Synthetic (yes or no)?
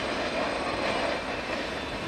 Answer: no